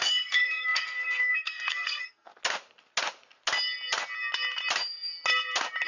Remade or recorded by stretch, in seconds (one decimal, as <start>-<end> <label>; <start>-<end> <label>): 0.0-2.3 remade; 2.3-5.9 recorded